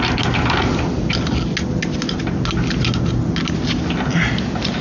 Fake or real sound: real